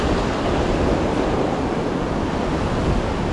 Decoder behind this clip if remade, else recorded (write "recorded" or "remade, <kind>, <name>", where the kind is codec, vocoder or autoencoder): recorded